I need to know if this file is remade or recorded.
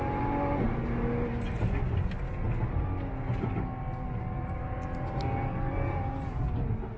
recorded